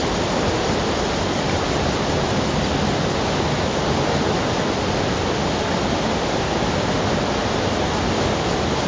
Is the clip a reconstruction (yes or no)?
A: no